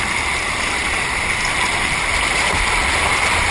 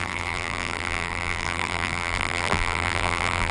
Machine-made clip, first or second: second